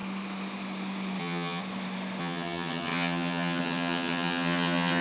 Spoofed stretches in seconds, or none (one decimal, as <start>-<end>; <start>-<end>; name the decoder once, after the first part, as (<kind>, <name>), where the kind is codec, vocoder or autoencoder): 1.2-1.6 (vocoder, HiFi-GAN); 2.2-5.0